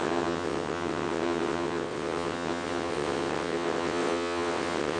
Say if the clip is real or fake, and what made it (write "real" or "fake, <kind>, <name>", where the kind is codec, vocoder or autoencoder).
fake, vocoder, WaveNeXt